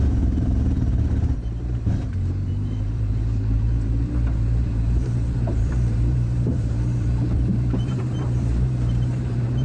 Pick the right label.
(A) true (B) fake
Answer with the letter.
B